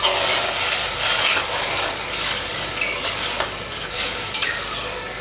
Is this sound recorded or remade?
remade